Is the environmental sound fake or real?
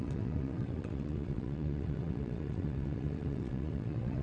fake